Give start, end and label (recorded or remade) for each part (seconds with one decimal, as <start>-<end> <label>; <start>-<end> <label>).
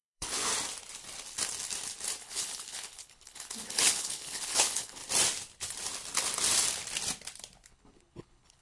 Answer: 0.0-0.5 remade; 0.5-2.2 recorded; 2.2-5.0 remade; 5.0-7.7 recorded; 7.7-8.6 remade